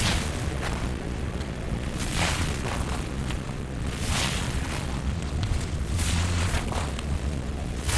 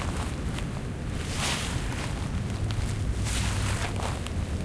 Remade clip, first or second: first